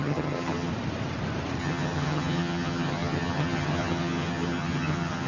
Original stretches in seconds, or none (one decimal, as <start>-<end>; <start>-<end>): 0.7-1.6